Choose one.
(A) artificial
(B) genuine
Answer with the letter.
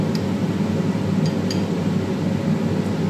B